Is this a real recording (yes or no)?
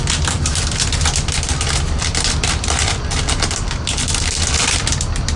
yes